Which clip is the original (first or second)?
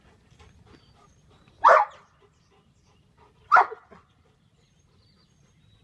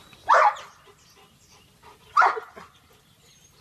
second